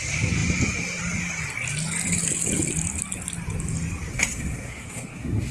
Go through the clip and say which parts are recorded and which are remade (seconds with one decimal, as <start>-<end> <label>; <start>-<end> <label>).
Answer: 0.0-4.1 recorded; 4.1-5.5 remade